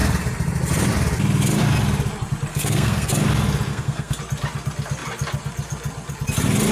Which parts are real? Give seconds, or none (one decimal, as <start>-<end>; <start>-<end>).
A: 0.0-2.5; 3.1-3.7; 4.2-6.7

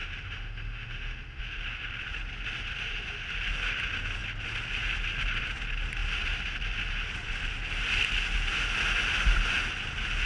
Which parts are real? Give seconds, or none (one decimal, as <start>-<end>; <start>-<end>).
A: 1.4-10.3